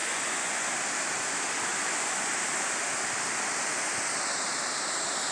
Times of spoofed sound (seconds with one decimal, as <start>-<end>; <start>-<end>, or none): 0.0-0.7; 1.7-2.3